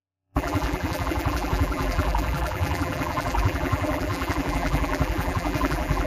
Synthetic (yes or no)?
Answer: yes